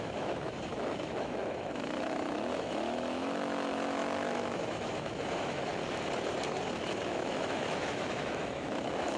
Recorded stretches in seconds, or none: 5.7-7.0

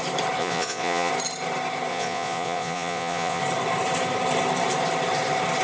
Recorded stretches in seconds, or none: 0.0-0.4; 1.1-1.9; 3.4-5.6

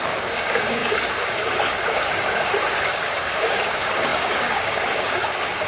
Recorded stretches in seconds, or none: none